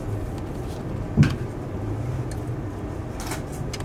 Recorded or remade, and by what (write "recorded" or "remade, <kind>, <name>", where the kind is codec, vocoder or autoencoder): recorded